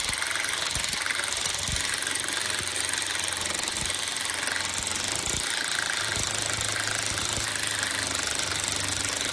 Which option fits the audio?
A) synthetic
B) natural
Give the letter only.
B